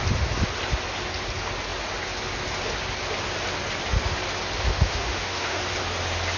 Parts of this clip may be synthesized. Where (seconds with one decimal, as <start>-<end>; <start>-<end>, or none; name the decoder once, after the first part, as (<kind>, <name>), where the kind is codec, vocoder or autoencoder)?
4.7-5.6 (autoencoder, DAC-VAE)